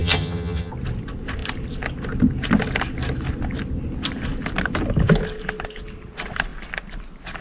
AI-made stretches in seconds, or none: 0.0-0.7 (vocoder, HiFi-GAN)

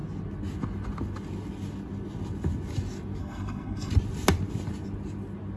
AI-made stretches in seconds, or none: 3.2-3.9 (codec, SNAC)

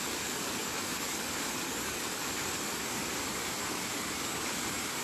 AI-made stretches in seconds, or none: 0.0-3.0 (codec, DAC); 3.6-5.0

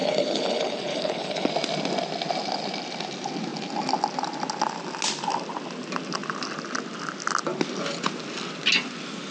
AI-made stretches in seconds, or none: 0.0-1.5 (codec, HILCodec)

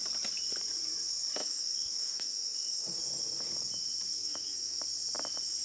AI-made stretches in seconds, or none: 1.4-3.0 (autoencoder, DAC-VAE); 4.2-4.8

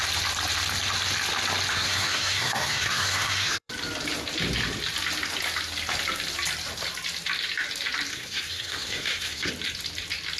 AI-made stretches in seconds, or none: 1.7-3.7 (codec, SNAC); 8.1-9.5

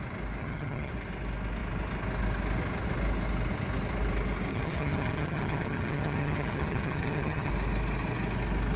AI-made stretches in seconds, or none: 0.4-0.9 (vocoder, HiFi-GAN); 4.5-7.5